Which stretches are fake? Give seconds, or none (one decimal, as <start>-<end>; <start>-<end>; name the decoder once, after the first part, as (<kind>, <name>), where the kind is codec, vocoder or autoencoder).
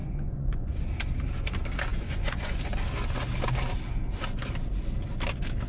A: 0.0-0.8 (vocoder, Vocos); 1.9-2.6